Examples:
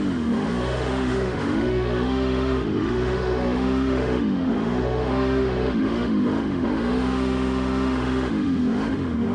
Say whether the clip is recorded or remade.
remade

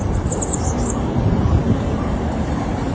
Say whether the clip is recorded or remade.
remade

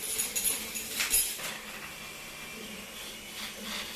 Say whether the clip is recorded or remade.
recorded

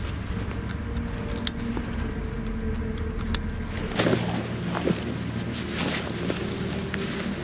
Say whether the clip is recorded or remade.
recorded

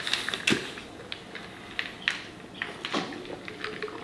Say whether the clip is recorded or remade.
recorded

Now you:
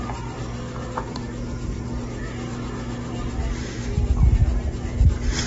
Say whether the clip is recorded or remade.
recorded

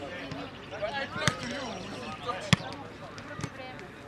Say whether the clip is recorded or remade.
recorded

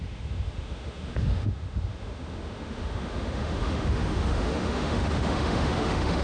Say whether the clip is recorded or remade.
remade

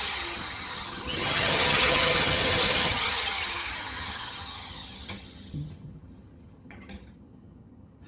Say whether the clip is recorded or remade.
remade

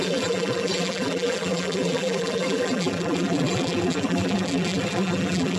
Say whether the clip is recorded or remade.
remade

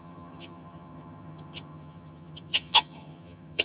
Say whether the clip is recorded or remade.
remade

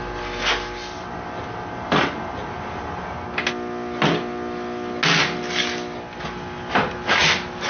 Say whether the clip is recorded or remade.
recorded